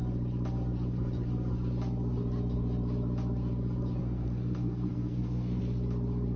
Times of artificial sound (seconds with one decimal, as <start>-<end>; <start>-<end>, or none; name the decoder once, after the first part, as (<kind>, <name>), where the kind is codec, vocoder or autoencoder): 4.0-5.6 (codec, SNAC)